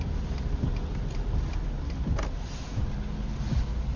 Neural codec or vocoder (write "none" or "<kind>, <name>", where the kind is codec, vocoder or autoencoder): none